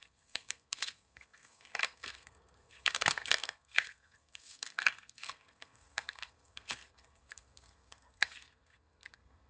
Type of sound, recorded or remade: remade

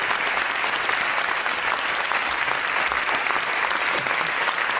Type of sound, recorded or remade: recorded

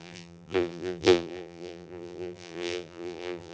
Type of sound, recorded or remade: remade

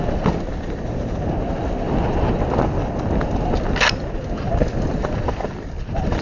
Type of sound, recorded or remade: recorded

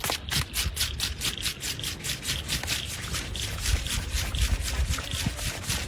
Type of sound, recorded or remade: recorded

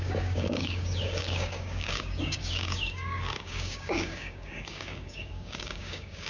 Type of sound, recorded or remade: remade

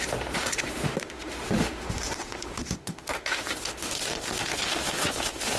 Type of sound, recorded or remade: remade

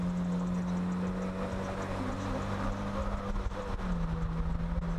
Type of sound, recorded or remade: recorded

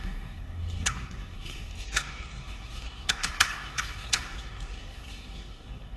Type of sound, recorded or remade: remade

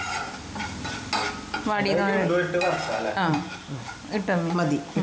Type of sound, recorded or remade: recorded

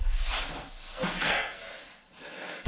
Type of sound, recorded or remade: remade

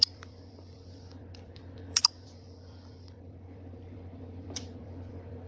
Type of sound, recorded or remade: remade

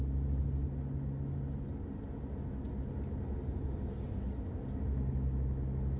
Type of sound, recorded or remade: recorded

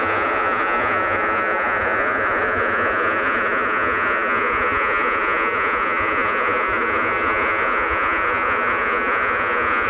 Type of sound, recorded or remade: remade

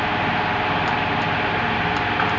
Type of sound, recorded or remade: remade